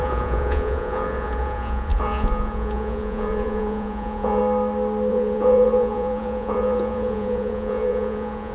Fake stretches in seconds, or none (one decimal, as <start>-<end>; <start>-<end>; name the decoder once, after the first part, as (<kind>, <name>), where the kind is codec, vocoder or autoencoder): 0.0-4.4 (vocoder, Vocos); 5.1-8.5